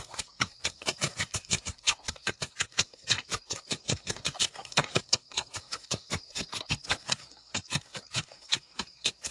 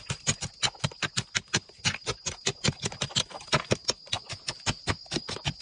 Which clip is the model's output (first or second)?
first